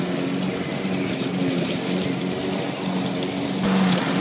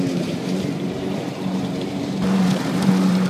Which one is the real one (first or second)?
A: first